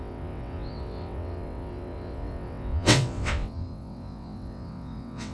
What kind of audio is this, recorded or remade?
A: remade